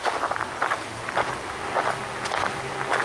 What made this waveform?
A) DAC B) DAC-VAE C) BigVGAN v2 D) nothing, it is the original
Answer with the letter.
D